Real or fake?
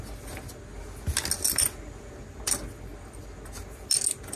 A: real